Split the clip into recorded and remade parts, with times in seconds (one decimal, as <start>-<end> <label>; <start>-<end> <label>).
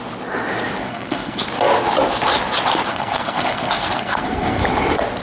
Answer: 0.0-0.8 recorded; 0.8-1.4 remade; 1.4-2.9 recorded; 2.9-4.6 remade; 4.6-5.2 recorded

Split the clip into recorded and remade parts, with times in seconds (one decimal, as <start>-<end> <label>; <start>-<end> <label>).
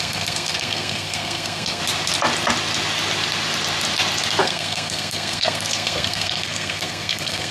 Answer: 0.0-1.8 remade; 1.8-4.4 recorded; 4.4-7.5 remade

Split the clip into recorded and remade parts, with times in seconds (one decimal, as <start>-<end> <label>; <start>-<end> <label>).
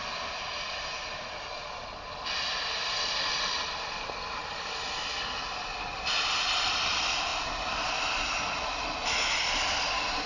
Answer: 0.0-10.3 recorded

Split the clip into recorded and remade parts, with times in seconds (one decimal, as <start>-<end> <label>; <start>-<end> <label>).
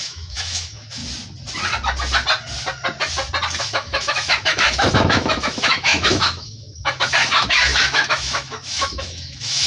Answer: 0.0-1.0 remade; 1.0-3.6 recorded; 3.6-9.7 remade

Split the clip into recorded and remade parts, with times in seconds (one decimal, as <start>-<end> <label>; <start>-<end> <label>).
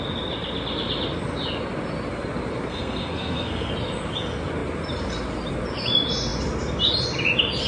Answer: 0.0-2.7 recorded; 2.7-3.7 remade; 3.7-7.7 recorded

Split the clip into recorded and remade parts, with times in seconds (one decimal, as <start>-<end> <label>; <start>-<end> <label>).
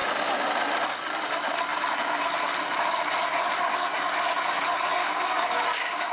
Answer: 0.0-5.0 recorded; 5.0-6.1 remade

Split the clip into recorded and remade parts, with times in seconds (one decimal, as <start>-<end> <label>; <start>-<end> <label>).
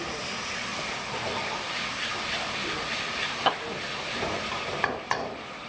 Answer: 0.0-0.7 recorded; 0.7-1.3 remade; 1.3-5.7 recorded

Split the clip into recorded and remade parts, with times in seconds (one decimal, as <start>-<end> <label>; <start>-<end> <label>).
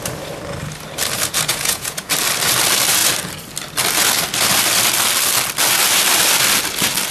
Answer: 0.0-1.5 recorded; 1.5-2.1 remade; 2.1-7.1 recorded